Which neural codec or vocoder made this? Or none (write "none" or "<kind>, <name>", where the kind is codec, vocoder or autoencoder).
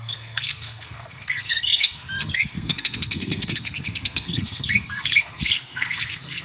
codec, SNAC